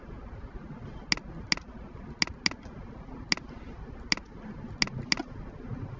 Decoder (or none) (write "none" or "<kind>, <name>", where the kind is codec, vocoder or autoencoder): none